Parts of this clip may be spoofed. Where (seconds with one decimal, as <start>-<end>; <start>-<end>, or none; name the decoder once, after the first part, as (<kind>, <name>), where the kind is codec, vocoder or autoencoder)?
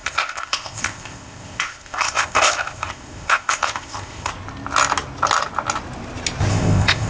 0.0-4.3 (codec, ZipCodec); 6.5-7.1